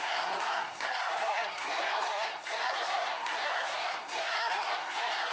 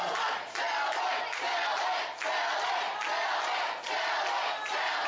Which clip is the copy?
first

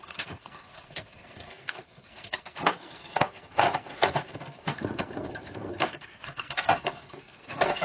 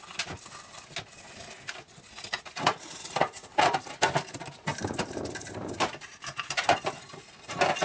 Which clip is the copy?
first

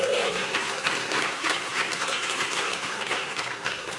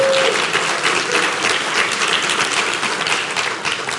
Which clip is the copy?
first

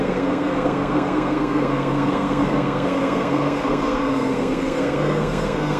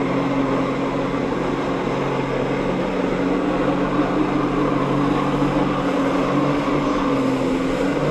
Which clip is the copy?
first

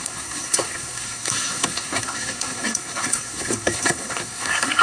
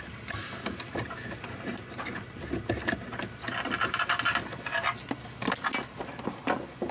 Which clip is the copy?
first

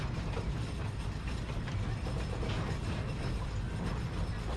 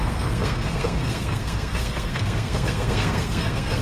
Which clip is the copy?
second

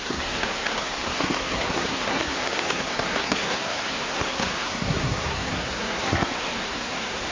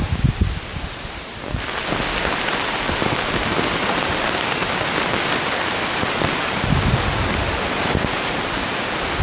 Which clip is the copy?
first